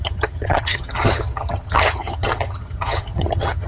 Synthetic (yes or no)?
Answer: yes